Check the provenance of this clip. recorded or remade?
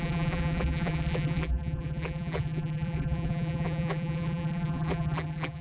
remade